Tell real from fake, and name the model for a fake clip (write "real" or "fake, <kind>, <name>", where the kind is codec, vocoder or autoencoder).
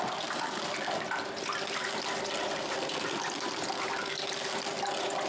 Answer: real